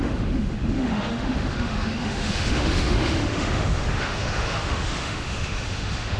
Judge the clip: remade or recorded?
remade